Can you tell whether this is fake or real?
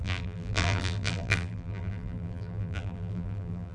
fake